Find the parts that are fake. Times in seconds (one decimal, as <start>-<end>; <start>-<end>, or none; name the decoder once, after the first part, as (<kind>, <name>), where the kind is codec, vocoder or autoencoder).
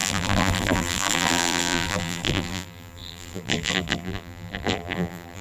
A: 0.0-5.4 (vocoder, BigVGAN v2)